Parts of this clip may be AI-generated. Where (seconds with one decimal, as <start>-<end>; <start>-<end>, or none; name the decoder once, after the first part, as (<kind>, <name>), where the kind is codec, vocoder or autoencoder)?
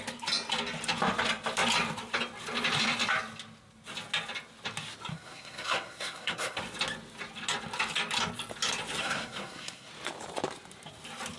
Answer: 5.1-6.6 (codec, SNAC); 9.0-9.9